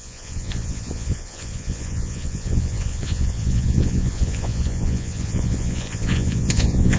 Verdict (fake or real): fake